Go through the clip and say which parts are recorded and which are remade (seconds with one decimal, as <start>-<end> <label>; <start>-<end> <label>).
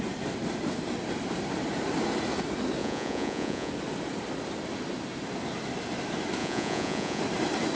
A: 0.0-2.8 recorded; 2.8-3.7 remade; 3.7-6.4 recorded; 6.4-7.2 remade; 7.2-7.8 recorded